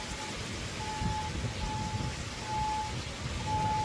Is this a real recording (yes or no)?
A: yes